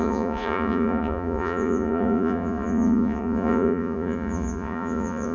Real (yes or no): no